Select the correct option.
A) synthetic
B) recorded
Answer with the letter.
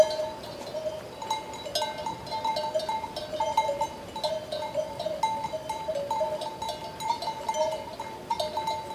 B